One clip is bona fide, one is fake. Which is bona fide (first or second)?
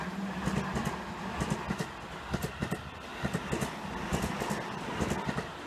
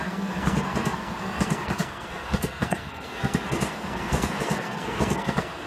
first